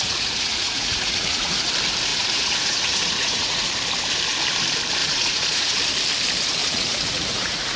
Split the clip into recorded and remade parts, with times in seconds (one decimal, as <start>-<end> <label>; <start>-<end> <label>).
0.0-1.7 remade; 1.7-2.1 recorded; 2.1-3.7 remade; 3.7-5.0 recorded; 5.0-5.8 remade; 5.8-6.6 recorded; 6.6-7.8 remade